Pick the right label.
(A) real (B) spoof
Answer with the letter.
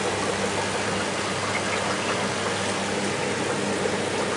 A